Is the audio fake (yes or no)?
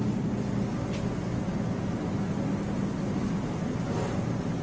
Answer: no